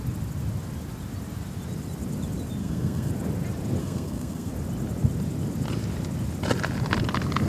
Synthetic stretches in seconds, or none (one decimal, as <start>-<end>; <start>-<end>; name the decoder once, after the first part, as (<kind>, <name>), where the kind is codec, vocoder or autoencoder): 2.6-3.1 (codec, SNAC); 3.8-4.5